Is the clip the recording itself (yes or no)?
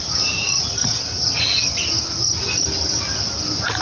yes